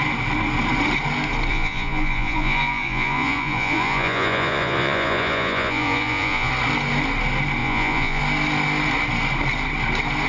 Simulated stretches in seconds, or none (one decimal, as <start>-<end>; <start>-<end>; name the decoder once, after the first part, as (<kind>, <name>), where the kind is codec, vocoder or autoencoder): 1.5-6.5 (vocoder, Vocos); 7.6-8.2